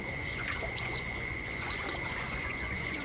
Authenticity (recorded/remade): remade